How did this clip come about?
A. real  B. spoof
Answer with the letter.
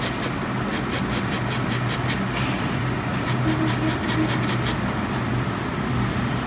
A